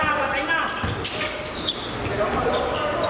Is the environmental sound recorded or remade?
recorded